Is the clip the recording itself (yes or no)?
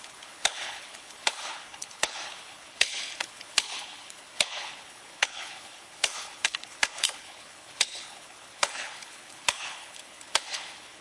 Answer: no